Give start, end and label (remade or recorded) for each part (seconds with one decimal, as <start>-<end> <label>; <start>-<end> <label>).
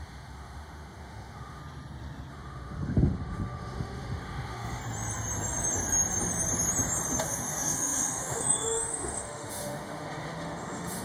0.0-1.6 remade; 1.6-2.3 recorded; 2.3-4.8 remade; 4.8-7.2 recorded; 7.2-11.0 remade